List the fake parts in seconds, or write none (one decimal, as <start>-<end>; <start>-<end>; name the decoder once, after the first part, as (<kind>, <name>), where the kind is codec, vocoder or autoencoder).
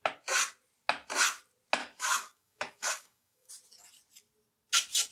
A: 1.8-3.5 (codec, DAC)